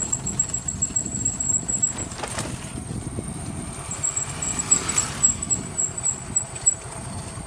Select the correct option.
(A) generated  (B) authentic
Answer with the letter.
B